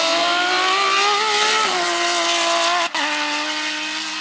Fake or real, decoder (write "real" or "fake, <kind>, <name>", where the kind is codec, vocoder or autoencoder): real